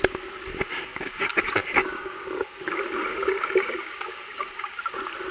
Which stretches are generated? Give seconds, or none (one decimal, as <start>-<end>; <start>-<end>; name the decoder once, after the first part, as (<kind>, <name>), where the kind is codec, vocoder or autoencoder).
0.7-1.3 (codec, DAC); 1.8-2.6; 3.1-4.8